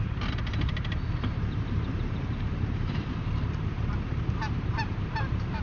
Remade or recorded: remade